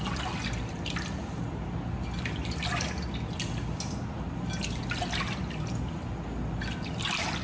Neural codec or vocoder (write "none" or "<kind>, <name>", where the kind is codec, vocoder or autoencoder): none